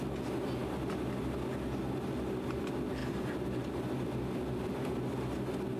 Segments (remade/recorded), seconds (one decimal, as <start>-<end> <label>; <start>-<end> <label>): 0.0-3.0 recorded; 3.0-4.3 remade; 4.3-5.8 recorded